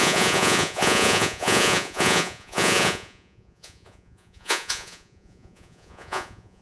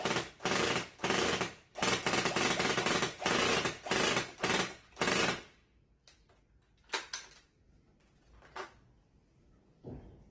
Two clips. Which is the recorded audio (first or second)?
second